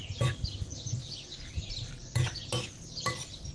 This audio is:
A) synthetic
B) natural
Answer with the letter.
B